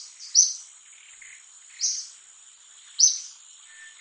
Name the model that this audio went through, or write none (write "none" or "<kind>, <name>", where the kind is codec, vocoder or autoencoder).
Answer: none